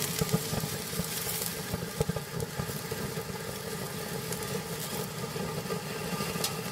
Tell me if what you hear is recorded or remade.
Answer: recorded